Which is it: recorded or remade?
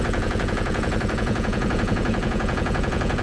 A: remade